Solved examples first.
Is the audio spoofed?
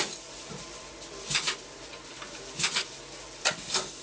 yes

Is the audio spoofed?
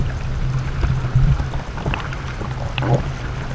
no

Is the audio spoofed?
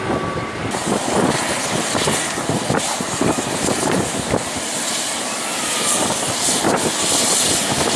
no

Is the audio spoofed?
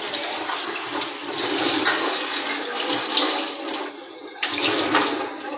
no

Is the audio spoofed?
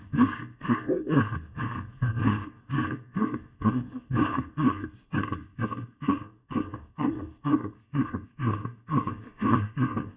yes